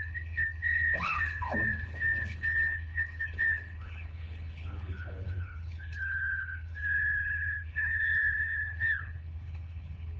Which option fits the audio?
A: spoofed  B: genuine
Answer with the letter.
A